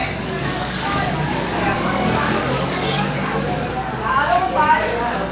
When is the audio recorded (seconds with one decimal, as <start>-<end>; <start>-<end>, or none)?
none